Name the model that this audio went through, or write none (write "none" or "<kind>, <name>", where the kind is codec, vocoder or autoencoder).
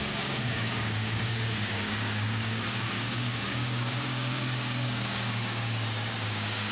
codec, DAC